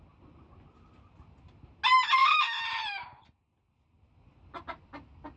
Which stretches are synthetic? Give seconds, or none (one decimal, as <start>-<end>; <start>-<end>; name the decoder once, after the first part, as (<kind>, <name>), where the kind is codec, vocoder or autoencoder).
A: none